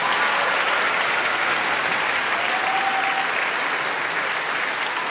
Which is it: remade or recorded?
recorded